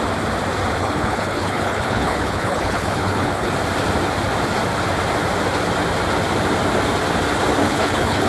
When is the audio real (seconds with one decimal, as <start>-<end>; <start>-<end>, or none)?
0.0-0.8; 3.5-7.6